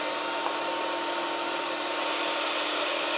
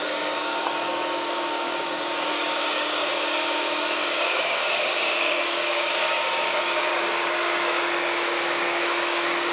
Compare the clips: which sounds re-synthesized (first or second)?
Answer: second